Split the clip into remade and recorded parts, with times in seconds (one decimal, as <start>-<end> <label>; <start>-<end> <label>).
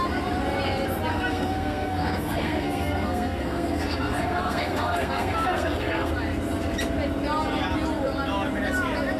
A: 0.0-1.1 recorded; 1.1-6.1 remade; 6.1-9.2 recorded